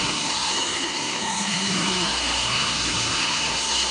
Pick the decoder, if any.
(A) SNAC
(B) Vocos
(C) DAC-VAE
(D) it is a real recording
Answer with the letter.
A